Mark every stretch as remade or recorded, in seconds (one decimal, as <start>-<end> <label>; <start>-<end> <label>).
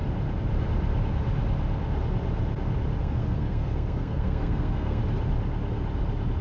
0.0-3.0 recorded; 3.0-5.0 remade; 5.0-6.4 recorded